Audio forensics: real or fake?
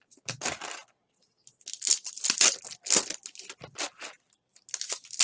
real